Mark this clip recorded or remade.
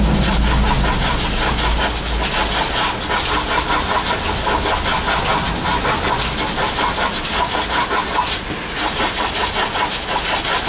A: recorded